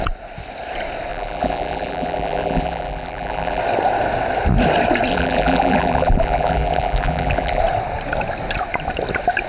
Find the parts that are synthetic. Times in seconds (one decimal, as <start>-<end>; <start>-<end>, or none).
1.1-3.6; 5.1-7.6